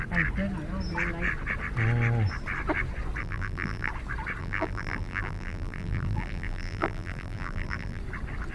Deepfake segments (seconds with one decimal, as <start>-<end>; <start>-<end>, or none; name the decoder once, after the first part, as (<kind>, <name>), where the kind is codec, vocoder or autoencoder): 3.2-3.9 (vocoder, BigVGAN v2); 4.4-8.0